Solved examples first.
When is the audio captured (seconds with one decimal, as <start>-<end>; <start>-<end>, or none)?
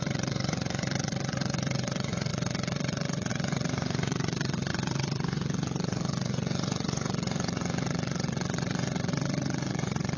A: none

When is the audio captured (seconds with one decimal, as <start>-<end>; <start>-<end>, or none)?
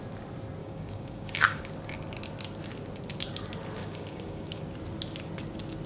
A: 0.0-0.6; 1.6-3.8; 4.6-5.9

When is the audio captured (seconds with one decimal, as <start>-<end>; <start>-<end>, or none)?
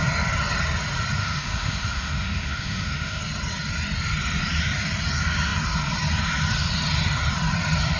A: 0.0-1.2; 3.2-8.0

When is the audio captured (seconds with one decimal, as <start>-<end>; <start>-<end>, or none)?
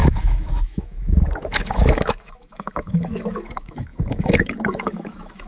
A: none